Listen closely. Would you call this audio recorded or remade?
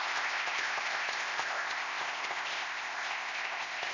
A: remade